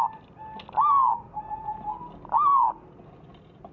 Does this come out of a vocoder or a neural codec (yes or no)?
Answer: no